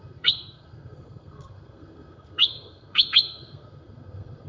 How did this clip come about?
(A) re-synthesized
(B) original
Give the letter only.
A